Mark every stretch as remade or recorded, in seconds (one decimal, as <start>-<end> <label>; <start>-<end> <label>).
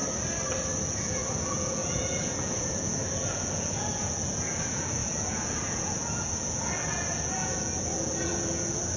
0.0-0.9 recorded; 0.9-9.0 remade